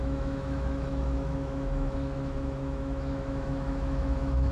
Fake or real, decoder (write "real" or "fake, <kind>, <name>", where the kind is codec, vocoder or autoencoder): fake, autoencoder, DAC-VAE